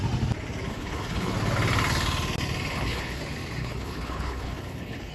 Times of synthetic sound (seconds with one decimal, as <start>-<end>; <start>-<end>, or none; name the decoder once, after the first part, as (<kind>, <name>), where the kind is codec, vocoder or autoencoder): 0.7-1.3 (codec, HILCodec); 2.7-3.2; 3.6-5.1